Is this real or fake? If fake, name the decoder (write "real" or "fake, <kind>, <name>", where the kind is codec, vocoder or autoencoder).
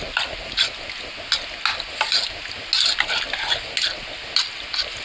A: real